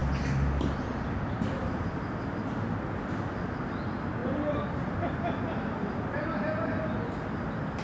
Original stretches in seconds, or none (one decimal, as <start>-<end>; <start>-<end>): 0.0-7.8